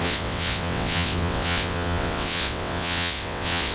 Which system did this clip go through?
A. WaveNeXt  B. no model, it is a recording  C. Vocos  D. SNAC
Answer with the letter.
A